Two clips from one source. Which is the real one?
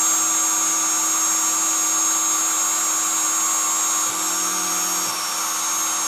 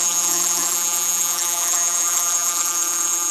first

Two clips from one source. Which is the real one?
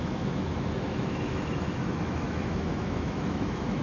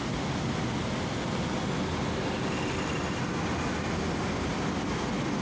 second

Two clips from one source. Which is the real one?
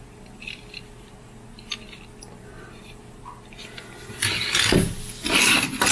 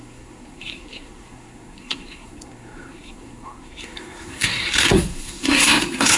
first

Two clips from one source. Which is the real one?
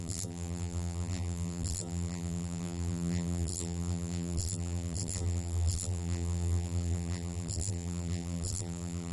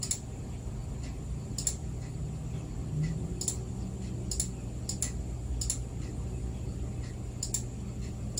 second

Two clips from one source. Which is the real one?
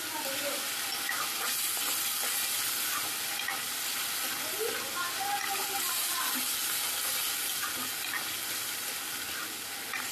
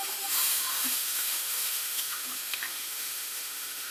first